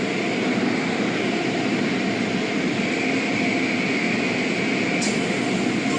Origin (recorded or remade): recorded